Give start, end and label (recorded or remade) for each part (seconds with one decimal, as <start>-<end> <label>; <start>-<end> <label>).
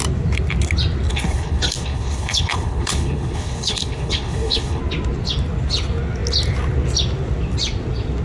0.0-1.1 recorded; 1.1-4.8 remade; 4.8-8.2 recorded